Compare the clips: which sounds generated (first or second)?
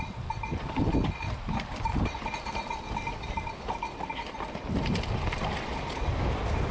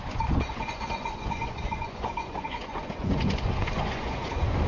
second